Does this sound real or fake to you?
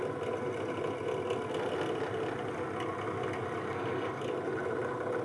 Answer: real